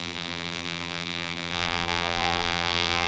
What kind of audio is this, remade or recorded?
remade